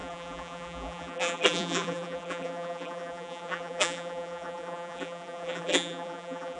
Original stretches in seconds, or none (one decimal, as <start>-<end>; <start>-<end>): none